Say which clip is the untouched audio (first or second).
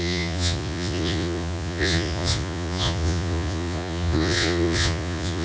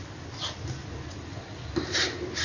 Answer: second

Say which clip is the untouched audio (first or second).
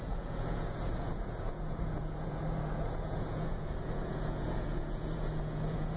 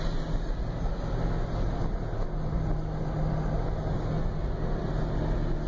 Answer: second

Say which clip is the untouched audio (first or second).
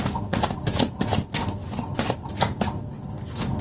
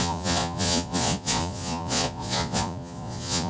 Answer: first